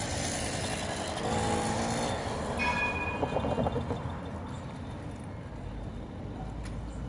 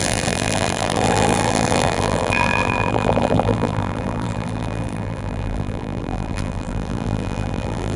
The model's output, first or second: second